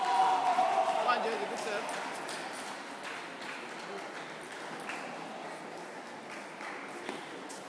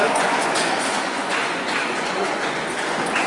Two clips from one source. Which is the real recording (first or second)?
first